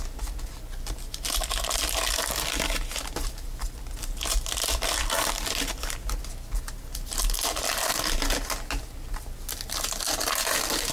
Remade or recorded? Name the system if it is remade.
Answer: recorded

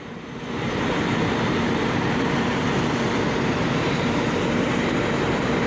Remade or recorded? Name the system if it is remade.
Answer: remade, vocoder, BigVGAN v2